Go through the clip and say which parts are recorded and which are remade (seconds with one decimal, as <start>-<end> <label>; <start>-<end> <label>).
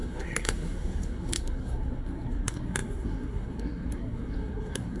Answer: 0.0-5.0 remade